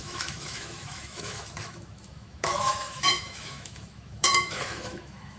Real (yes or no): no